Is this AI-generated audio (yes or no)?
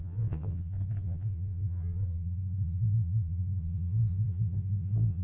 yes